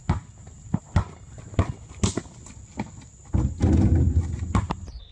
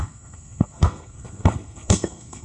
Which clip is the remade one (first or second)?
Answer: second